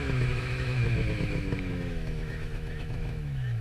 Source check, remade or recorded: remade